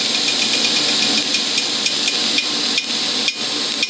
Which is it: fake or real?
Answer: real